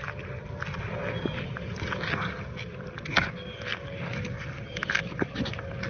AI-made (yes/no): no